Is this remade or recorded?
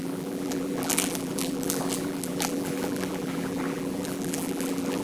remade